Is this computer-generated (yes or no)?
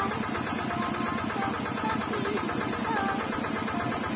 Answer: no